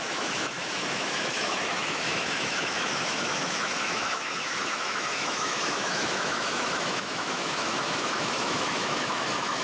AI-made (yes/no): yes